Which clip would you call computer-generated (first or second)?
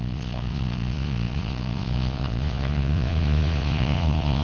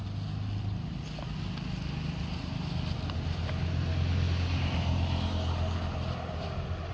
first